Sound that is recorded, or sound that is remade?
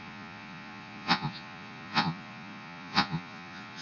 remade